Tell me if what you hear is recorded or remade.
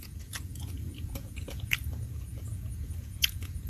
remade